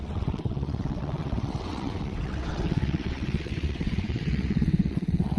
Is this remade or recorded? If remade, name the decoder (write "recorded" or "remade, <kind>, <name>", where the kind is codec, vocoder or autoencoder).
remade, vocoder, WaveNeXt